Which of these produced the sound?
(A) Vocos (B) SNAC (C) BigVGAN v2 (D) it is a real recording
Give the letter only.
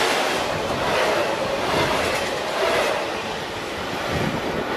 D